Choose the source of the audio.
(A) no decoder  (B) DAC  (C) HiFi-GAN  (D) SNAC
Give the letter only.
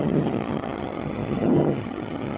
C